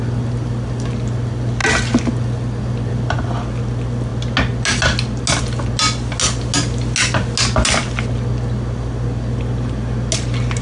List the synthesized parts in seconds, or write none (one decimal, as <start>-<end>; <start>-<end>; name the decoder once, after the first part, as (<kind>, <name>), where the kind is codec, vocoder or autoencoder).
none